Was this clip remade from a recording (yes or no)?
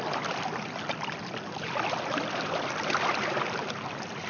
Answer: no